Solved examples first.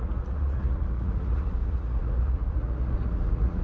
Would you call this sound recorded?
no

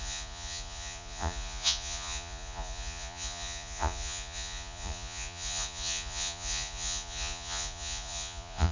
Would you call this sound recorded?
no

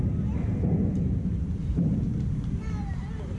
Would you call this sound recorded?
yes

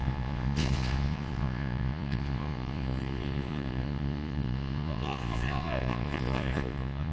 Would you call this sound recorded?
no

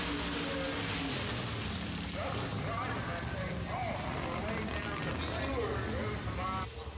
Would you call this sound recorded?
yes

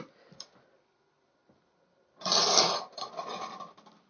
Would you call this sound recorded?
yes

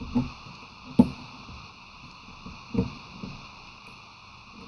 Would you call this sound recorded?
yes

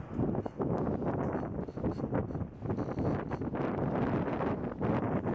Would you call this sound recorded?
yes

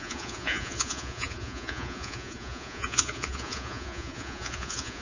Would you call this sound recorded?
no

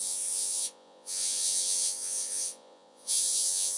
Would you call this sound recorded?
no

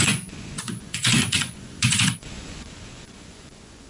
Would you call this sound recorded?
no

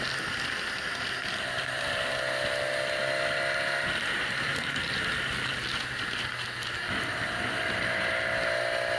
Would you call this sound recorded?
yes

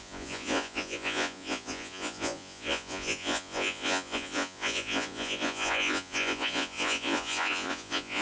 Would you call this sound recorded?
no